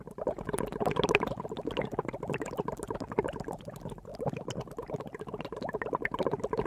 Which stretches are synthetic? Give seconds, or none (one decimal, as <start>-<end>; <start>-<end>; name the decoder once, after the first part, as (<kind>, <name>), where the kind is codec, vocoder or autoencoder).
none